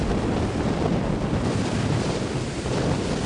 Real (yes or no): yes